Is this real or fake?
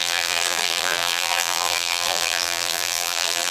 fake